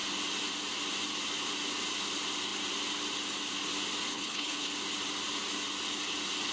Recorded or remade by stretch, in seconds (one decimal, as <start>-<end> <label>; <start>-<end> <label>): 0.0-4.1 recorded; 4.1-4.7 remade; 4.7-6.5 recorded